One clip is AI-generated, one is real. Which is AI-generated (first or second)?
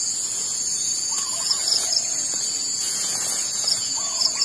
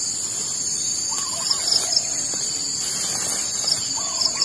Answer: first